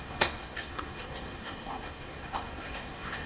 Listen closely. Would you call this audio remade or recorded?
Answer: remade